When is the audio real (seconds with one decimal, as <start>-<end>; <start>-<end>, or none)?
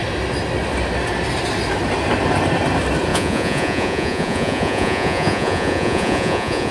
0.0-3.1